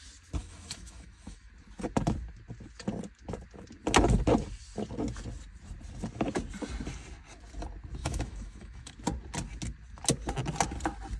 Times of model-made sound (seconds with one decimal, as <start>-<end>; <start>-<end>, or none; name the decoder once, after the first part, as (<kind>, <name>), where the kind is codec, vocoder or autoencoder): 0.4-1.5 (autoencoder, DAC-VAE); 8.0-8.9